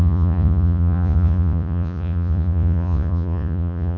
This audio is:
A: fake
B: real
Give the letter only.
A